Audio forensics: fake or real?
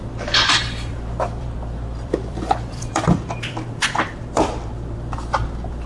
fake